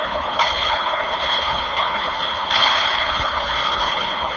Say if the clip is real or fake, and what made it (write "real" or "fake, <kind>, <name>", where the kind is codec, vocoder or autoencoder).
fake, codec, HILCodec